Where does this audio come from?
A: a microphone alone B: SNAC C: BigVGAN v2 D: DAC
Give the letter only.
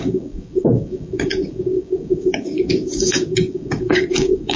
D